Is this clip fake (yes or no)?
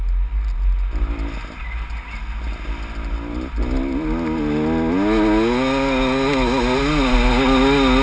no